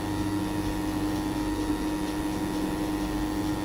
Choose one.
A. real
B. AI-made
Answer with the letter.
A